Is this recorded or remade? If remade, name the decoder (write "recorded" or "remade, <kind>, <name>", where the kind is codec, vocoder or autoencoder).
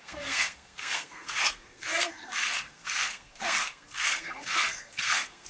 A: remade, codec, SNAC